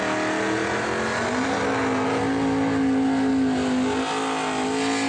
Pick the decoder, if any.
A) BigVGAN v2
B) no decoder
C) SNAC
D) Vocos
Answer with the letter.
B